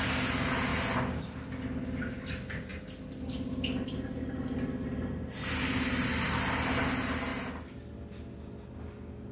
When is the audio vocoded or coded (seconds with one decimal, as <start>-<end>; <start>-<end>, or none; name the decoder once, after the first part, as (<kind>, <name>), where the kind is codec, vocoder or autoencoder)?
7.3-8.4 (vocoder, BigVGAN v2)